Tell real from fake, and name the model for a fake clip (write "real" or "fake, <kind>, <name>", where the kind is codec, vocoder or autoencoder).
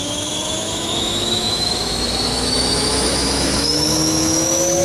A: fake, autoencoder, DAC-VAE